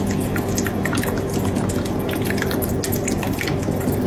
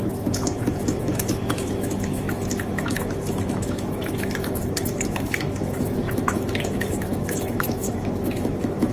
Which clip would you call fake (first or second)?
second